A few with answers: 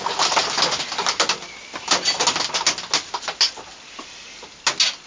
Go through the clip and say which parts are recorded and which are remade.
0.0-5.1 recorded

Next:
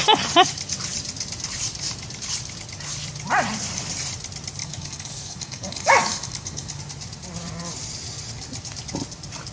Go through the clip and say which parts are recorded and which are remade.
0.0-4.6 recorded; 4.6-6.8 remade; 6.8-9.5 recorded

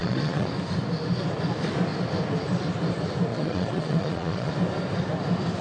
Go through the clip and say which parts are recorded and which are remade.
0.0-0.5 remade; 0.5-3.3 recorded; 3.3-4.5 remade; 4.5-5.6 recorded